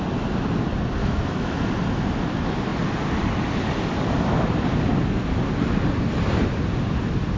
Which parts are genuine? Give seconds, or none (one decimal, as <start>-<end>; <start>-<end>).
0.0-1.0; 1.6-7.4